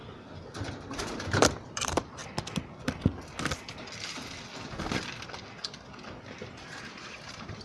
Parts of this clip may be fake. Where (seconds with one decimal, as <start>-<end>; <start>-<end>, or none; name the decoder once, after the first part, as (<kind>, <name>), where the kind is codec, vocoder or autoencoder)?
0.0-2.2 (vocoder, BigVGAN v2); 6.8-7.6